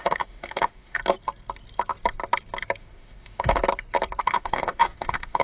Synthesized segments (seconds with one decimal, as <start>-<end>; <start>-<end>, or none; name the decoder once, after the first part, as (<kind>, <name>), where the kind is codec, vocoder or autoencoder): 0.0-1.0 (autoencoder, DAC-VAE); 2.8-3.6; 4.2-5.4

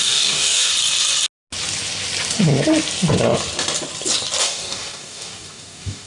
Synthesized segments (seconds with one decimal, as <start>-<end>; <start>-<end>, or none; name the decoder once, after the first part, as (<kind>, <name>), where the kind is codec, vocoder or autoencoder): 0.0-0.7 (codec, DAC); 4.4-6.1

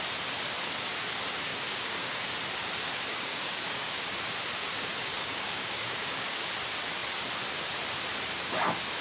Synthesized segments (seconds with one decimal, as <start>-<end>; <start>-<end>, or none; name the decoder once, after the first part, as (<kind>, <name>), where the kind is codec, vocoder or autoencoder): 1.5-2.2 (codec, DAC); 3.1-4.0; 4.6-6.5

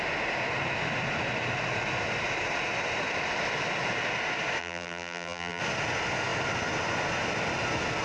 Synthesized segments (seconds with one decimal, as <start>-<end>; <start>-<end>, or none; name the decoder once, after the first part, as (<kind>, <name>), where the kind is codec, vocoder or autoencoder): 4.6-5.6 (vocoder, BigVGAN v2)

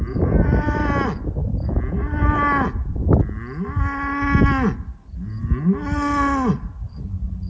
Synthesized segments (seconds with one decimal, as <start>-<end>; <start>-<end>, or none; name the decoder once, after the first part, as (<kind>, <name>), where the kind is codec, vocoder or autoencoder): none

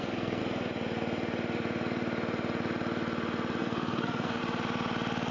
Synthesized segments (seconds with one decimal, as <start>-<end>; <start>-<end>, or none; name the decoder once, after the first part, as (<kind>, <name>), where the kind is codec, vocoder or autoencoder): 0.0-0.4 (codec, SNAC); 3.6-4.4

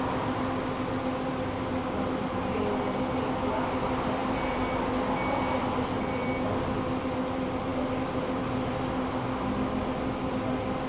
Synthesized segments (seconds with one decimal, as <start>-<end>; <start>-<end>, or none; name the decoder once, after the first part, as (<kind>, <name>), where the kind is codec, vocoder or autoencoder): none